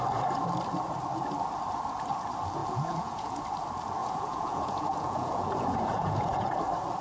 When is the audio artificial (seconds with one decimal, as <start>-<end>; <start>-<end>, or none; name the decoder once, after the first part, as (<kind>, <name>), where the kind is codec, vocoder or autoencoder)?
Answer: 2.6-3.4 (vocoder, Vocos); 4.0-6.6